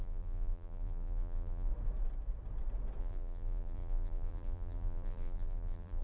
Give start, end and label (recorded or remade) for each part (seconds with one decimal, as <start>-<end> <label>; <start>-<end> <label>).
0.0-1.7 remade; 1.7-3.0 recorded; 3.0-6.0 remade